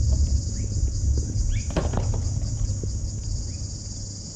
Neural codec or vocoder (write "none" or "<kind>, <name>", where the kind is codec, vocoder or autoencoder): none